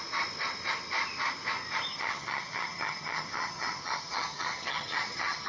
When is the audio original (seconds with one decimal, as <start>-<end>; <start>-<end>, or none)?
0.0-1.9